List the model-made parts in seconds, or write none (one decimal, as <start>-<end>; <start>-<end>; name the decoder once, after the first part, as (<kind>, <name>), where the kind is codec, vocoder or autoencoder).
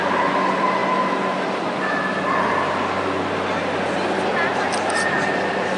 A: none